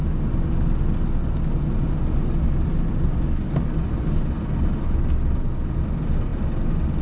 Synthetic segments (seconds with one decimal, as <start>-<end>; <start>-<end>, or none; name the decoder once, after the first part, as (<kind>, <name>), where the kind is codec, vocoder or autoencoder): none